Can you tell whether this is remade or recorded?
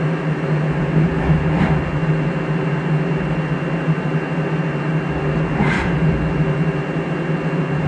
recorded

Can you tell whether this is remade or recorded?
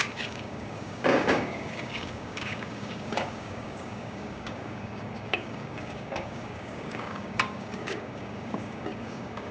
remade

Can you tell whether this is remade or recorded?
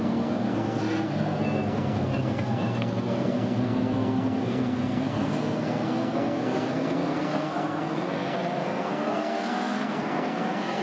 remade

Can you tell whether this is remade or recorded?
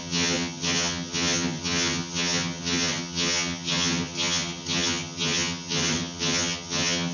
remade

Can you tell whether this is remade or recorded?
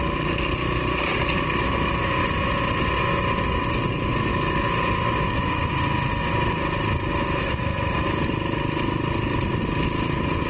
recorded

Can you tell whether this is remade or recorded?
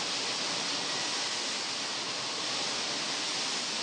recorded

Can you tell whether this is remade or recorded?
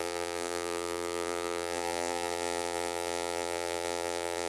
remade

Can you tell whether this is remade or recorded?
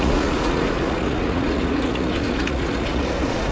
remade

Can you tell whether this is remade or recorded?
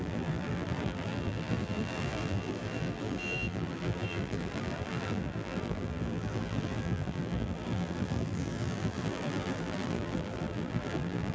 remade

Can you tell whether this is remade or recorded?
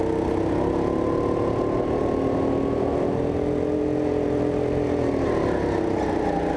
recorded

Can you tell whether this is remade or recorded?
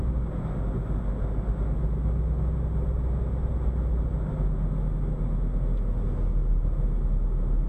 recorded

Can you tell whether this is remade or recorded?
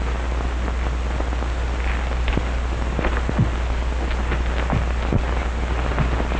recorded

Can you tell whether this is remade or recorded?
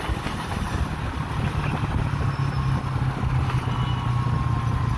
recorded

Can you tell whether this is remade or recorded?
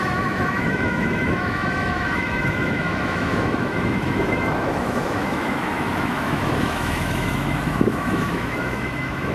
remade